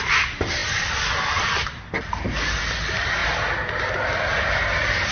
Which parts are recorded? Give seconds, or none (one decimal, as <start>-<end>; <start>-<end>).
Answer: 0.0-5.1